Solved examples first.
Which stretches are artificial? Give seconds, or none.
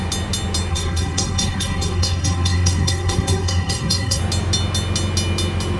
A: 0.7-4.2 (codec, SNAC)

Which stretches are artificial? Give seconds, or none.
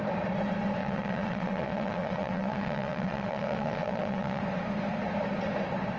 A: 0.8-4.4 (vocoder, WaveNeXt)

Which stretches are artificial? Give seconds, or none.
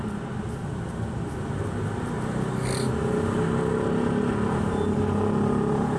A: none